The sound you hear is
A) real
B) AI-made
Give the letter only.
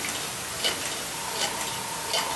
A